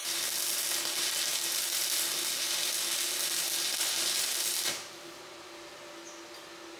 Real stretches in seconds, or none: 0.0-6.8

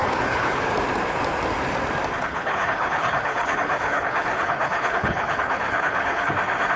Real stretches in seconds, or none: 0.6-2.2; 6.3-6.8

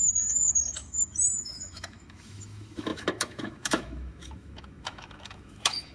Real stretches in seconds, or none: none